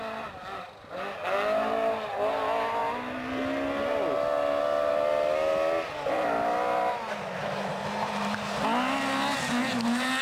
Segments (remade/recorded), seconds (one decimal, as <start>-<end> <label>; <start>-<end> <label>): 0.0-10.2 recorded